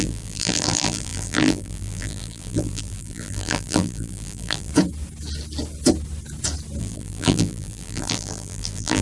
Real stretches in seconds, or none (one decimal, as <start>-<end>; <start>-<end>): 4.7-6.8